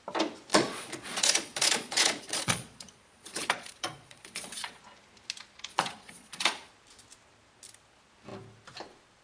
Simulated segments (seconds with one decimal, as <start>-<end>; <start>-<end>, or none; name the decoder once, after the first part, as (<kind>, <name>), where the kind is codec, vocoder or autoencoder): 0.5-4.8 (vocoder, Vocos); 5.7-6.7